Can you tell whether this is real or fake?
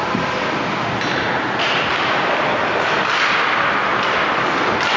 real